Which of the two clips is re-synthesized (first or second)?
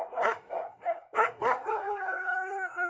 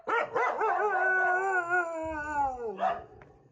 first